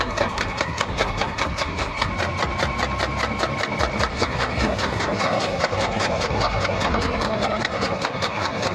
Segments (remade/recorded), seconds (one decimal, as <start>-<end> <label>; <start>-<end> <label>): 0.0-2.1 remade; 2.1-4.1 recorded; 4.1-8.7 remade